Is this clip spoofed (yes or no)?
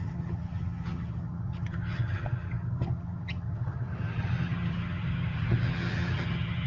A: yes